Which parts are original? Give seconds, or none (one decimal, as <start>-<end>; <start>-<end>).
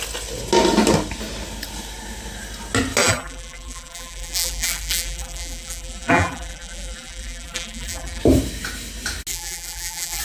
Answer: 0.0-3.0; 8.2-9.3